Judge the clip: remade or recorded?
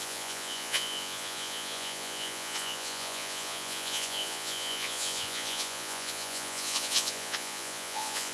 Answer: remade